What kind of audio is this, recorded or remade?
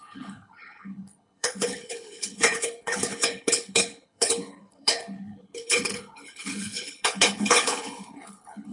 remade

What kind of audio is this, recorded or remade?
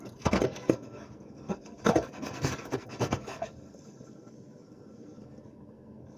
remade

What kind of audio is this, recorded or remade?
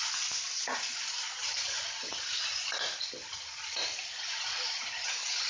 recorded